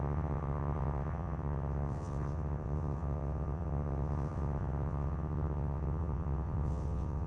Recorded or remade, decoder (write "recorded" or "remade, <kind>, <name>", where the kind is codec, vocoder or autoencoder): remade, vocoder, WaveNeXt